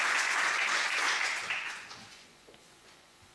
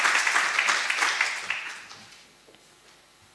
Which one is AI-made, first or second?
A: first